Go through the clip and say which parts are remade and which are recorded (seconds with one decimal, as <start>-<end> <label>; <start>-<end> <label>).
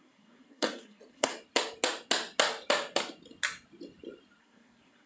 0.0-1.3 remade; 1.3-4.4 recorded; 4.4-5.1 remade